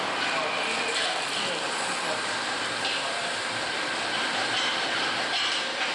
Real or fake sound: real